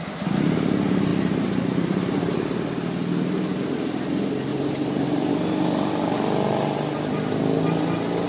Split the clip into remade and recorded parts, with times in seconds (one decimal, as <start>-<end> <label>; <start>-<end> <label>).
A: 0.0-1.1 recorded; 1.1-2.2 remade; 2.2-4.5 recorded; 4.5-5.3 remade; 5.3-8.3 recorded